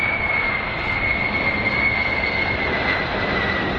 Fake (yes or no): no